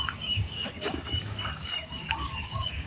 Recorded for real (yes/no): no